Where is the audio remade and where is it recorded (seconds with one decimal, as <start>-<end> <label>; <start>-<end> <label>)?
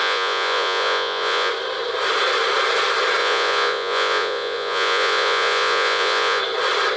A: 0.0-1.5 remade; 1.5-3.2 recorded; 3.2-6.4 remade; 6.4-7.0 recorded